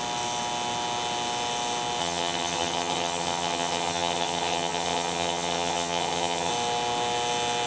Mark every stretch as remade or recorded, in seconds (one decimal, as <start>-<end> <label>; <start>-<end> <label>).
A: 0.0-2.0 recorded; 2.0-6.5 remade; 6.5-7.7 recorded